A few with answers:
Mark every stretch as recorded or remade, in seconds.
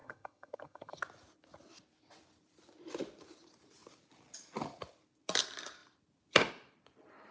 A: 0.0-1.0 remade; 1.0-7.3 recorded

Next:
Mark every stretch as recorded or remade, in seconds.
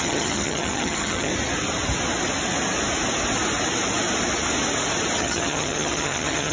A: 0.0-1.3 remade; 1.3-5.2 recorded; 5.2-6.5 remade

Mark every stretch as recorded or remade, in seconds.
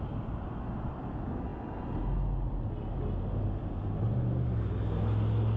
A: 0.0-5.6 recorded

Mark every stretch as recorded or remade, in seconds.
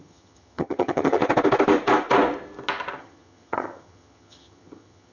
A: 0.0-1.2 remade; 1.2-3.0 recorded; 3.0-5.1 remade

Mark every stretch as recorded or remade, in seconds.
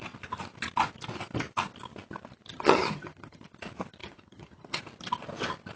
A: 0.0-2.5 recorded; 2.5-3.4 remade; 3.4-4.0 recorded; 4.0-4.8 remade; 4.8-5.8 recorded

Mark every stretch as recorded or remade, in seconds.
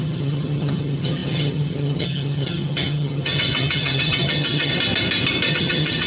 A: 0.0-4.7 remade; 4.7-5.5 recorded; 5.5-6.1 remade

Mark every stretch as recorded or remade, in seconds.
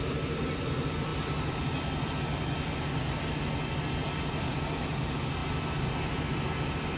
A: 0.0-7.0 recorded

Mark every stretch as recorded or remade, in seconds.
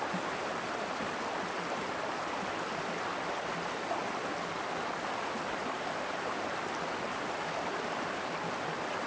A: 0.0-9.1 recorded